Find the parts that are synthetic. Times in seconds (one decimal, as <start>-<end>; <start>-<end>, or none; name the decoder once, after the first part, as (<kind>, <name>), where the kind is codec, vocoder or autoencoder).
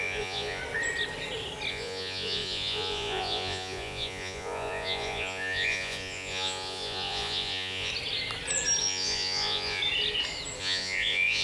0.0-0.6 (vocoder, Vocos); 1.7-7.9; 8.8-9.8; 10.6-11.4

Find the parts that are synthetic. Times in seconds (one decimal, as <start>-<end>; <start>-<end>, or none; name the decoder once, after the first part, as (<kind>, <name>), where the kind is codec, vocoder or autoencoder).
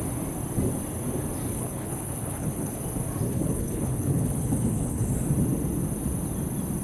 1.5-2.8 (codec, HILCodec); 3.3-5.1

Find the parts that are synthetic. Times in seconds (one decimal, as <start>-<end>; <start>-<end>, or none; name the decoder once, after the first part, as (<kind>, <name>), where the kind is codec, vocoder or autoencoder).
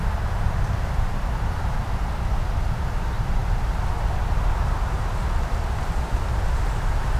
none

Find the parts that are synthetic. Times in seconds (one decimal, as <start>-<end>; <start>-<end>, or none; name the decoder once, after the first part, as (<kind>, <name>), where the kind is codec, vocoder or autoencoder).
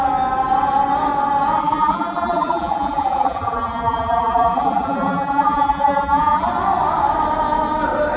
1.6-6.5 (vocoder, BigVGAN v2)